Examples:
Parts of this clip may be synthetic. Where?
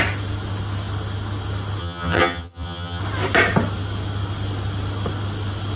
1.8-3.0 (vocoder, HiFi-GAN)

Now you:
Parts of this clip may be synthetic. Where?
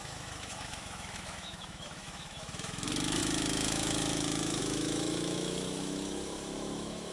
0.0-7.1 (autoencoder, DAC-VAE)